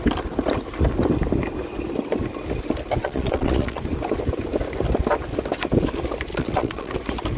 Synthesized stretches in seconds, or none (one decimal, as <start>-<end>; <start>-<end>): 3.0-3.8; 6.3-6.9